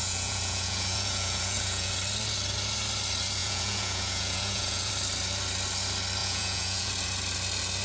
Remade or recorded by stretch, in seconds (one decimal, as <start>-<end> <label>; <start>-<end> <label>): 0.0-1.9 remade; 1.9-3.4 recorded; 3.4-4.9 remade; 4.9-6.2 recorded; 6.2-6.9 remade; 6.9-7.8 recorded